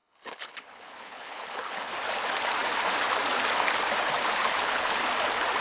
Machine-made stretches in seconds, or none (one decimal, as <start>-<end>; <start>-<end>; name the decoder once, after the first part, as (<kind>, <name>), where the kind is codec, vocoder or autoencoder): 0.0-1.9 (codec, HILCodec); 4.4-5.0